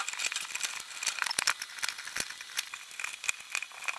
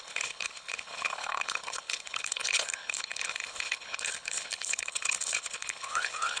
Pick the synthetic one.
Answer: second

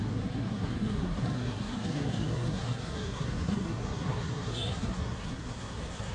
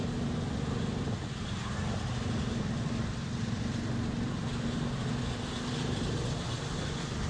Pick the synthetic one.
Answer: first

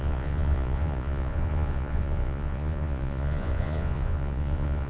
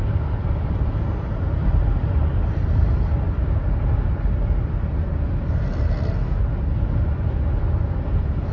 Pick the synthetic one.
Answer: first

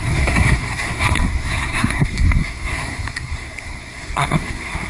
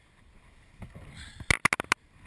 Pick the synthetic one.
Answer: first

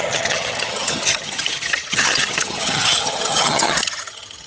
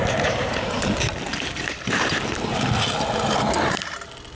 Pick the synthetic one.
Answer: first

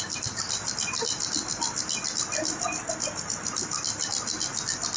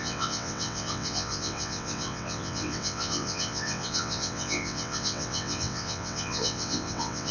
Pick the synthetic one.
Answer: second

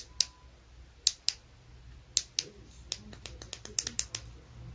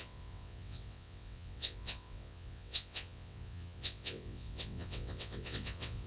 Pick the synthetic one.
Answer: second